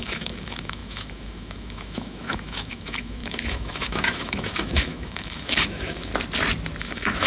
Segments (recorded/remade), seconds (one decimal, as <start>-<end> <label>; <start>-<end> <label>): 0.0-6.1 remade; 6.1-6.8 recorded; 6.8-7.3 remade